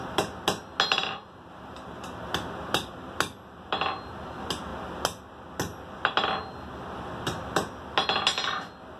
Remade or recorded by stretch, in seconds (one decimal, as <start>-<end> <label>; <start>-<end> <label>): 0.0-9.0 recorded